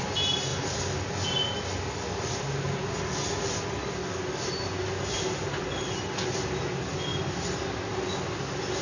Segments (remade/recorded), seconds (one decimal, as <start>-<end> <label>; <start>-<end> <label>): 0.0-8.8 recorded